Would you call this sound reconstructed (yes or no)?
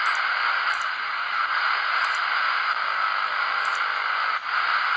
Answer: no